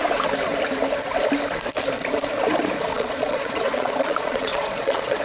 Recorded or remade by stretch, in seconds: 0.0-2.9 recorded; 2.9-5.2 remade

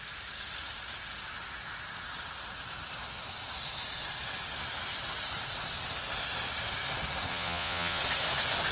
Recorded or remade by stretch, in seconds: 0.0-7.3 recorded; 7.3-8.0 remade; 8.0-8.7 recorded

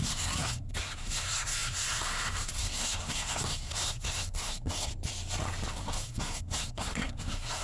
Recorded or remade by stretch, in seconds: 0.0-4.9 remade; 4.9-5.7 recorded; 5.7-7.6 remade

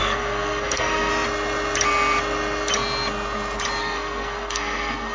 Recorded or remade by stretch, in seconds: 0.0-1.1 remade; 1.1-3.8 recorded; 3.8-5.1 remade

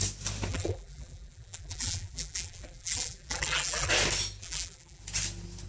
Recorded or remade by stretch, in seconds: 0.0-0.5 recorded; 0.5-3.9 remade; 3.9-4.4 recorded; 4.4-5.0 remade; 5.0-5.7 recorded

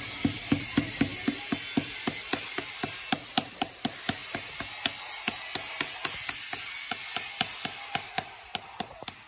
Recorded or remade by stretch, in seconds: 0.0-1.1 remade; 1.1-3.1 recorded; 3.1-4.2 remade; 4.2-8.3 recorded; 8.3-9.3 remade